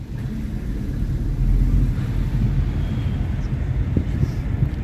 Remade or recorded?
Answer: recorded